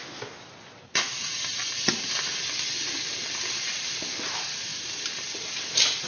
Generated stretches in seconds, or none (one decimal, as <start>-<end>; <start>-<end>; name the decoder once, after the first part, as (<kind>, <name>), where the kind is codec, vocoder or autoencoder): 0.0-1.5 (vocoder, BigVGAN v2); 3.3-4.7; 5.6-6.1